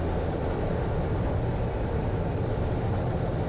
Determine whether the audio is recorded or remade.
remade